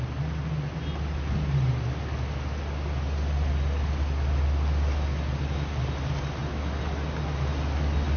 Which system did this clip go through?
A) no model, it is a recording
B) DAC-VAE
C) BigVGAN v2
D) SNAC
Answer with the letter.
A